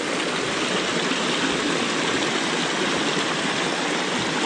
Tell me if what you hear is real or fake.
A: real